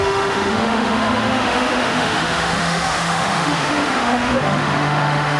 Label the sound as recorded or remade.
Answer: remade